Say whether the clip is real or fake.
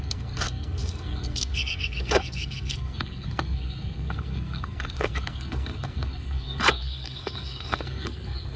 fake